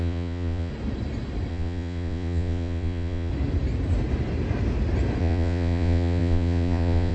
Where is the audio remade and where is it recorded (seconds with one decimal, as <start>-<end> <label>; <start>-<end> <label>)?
0.0-0.7 remade; 0.7-1.5 recorded; 1.5-3.3 remade; 3.3-5.2 recorded; 5.2-7.1 remade